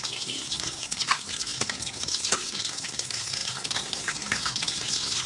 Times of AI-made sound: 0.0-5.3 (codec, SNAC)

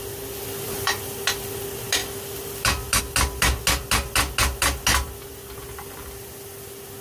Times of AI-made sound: none

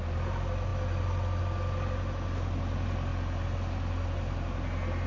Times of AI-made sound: none

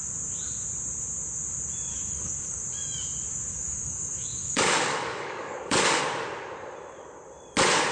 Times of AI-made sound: 1.9-2.6 (codec, DAC); 3.5-6.0

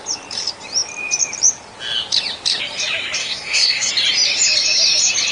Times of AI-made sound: 3.2-3.9 (codec, SNAC)

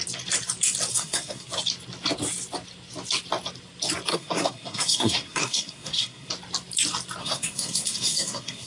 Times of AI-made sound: 0.9-1.5 (codec, SNAC); 4.1-6.3; 7.2-8.7

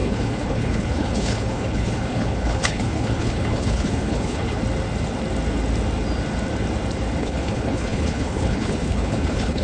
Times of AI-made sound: 0.0-4.6 (codec, HILCodec); 7.2-9.6

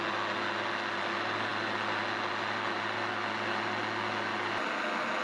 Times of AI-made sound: none